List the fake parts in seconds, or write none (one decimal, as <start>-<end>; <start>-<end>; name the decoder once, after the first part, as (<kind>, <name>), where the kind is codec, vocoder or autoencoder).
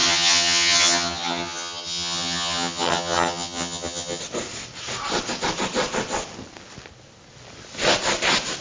0.0-4.2 (vocoder, HiFi-GAN)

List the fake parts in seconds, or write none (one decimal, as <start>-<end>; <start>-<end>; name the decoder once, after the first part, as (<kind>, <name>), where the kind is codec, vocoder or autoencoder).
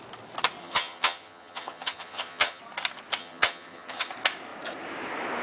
0.6-2.6 (vocoder, HiFi-GAN); 3.2-4.1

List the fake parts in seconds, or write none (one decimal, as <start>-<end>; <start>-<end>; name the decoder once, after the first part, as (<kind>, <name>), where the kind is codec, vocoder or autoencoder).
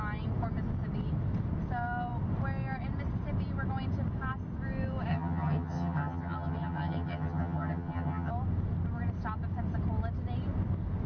5.1-8.3 (vocoder, HiFi-GAN)